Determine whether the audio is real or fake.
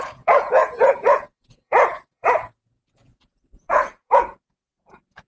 fake